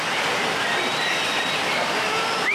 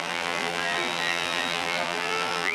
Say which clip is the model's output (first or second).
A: second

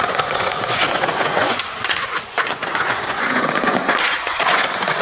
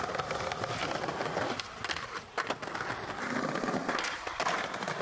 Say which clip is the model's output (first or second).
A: first